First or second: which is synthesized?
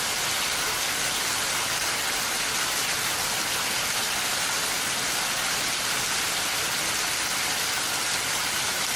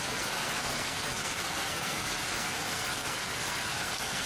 second